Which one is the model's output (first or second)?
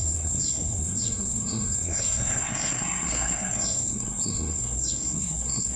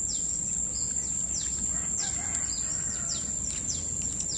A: first